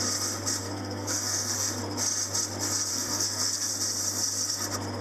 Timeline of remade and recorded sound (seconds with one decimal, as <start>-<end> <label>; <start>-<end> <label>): 0.0-0.6 recorded; 0.6-1.7 remade; 1.7-2.9 recorded; 2.9-3.7 remade; 3.7-5.0 recorded